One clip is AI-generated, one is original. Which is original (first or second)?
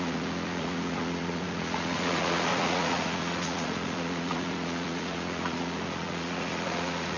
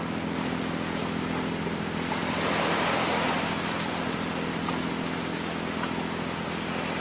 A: second